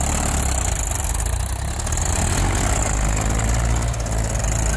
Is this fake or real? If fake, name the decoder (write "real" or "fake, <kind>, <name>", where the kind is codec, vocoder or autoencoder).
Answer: real